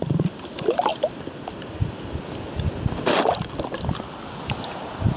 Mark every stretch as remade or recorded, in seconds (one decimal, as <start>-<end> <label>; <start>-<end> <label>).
0.0-0.9 recorded; 0.9-2.2 remade; 2.2-5.2 recorded